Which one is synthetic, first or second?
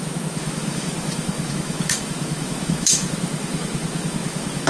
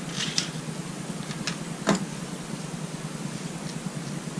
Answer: first